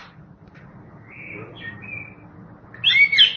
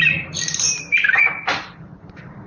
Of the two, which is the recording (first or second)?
first